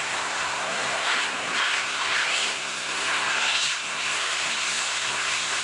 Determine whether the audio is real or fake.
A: fake